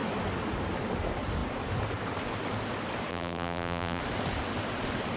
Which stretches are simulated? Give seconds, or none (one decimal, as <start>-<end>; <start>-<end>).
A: 3.1-4.0